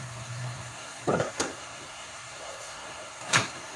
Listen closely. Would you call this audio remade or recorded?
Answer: remade